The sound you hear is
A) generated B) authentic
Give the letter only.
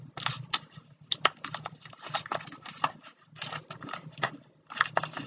B